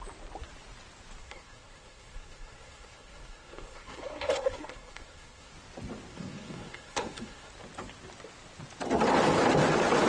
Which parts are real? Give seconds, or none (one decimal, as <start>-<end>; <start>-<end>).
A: 0.0-1.2; 5.5-6.1; 7.5-10.1